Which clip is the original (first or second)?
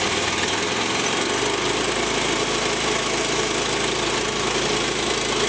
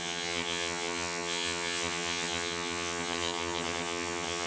first